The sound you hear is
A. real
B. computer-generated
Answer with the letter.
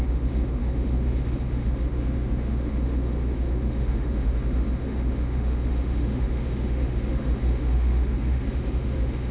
B